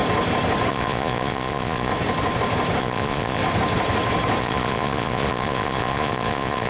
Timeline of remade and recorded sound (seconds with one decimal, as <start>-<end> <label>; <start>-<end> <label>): 0.0-0.7 recorded; 0.7-1.9 remade; 1.9-2.8 recorded; 2.8-3.4 remade; 3.4-4.4 recorded; 4.4-6.7 remade